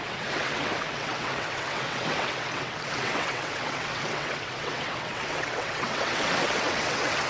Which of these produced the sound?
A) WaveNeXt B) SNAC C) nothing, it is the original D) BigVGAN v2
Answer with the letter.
A